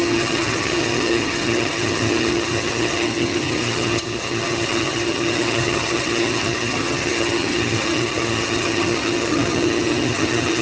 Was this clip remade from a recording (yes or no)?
yes